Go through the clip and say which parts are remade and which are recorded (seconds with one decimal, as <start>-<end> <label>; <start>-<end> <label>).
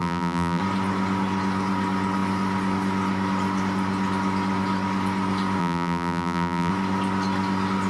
0.0-0.6 remade; 0.6-5.6 recorded; 5.6-6.7 remade; 6.7-7.9 recorded